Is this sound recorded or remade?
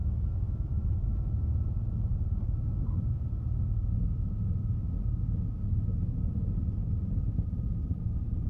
recorded